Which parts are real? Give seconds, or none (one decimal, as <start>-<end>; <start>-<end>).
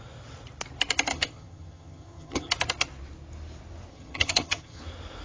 0.0-1.1; 2.5-3.9; 4.8-5.2